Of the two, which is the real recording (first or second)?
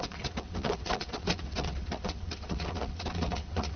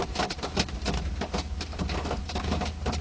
second